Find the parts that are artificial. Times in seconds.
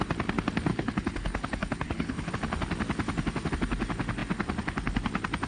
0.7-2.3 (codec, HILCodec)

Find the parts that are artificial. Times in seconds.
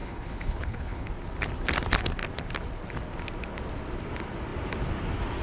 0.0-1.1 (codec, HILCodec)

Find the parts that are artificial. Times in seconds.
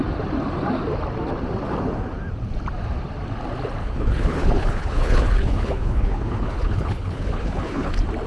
3.8-7.9 (codec, HILCodec)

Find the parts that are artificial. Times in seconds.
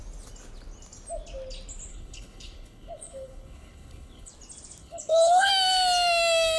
1.9-4.3 (codec, HILCodec); 4.8-5.5